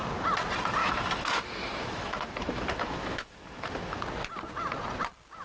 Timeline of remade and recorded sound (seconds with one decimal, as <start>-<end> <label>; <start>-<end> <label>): 0.0-0.8 recorded; 0.8-4.0 remade; 4.0-5.4 recorded